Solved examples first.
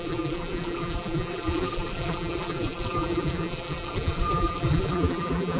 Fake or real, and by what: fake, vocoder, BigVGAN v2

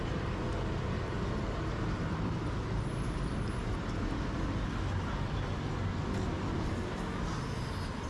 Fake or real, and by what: real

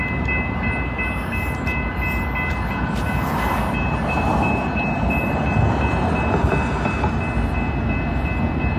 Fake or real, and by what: real